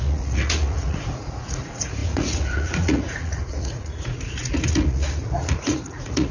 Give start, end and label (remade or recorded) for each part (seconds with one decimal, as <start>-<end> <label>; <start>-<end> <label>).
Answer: 0.0-6.3 remade